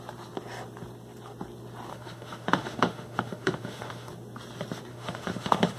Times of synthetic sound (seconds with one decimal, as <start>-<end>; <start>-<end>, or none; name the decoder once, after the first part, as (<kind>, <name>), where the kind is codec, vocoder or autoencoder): 1.9-4.1 (autoencoder, DAC-VAE); 4.9-5.8